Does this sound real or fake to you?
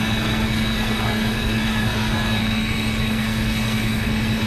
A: fake